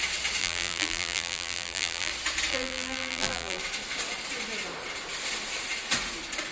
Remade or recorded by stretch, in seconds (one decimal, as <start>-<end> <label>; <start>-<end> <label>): 0.0-0.4 recorded; 0.4-2.1 remade; 2.1-2.5 recorded; 2.5-3.6 remade; 3.6-6.5 recorded